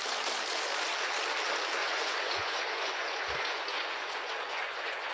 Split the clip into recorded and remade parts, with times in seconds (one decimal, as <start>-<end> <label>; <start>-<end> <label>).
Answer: 0.0-1.8 recorded; 1.8-5.1 remade